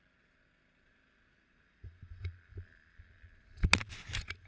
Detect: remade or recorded recorded